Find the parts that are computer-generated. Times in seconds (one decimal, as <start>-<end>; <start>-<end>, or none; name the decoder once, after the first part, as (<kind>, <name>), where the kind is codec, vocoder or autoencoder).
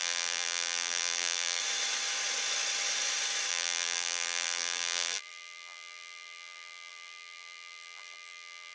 0.0-1.6 (vocoder, BigVGAN v2); 3.5-8.7